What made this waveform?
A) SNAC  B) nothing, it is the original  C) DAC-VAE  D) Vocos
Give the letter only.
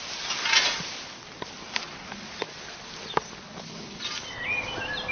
B